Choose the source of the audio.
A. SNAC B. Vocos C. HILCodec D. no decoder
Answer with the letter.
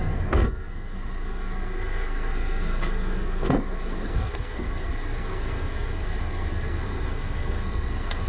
A